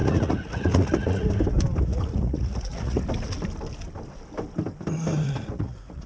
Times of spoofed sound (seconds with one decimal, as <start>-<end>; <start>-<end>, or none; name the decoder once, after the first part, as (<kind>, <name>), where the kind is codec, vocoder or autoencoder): 0.0-1.3 (vocoder, Vocos); 1.9-3.0; 5.1-6.1